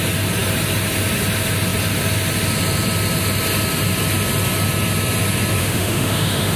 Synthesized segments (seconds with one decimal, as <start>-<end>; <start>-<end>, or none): 5.6-6.6